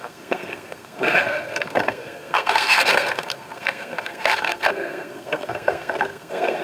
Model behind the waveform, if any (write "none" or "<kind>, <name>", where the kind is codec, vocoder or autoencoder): codec, SNAC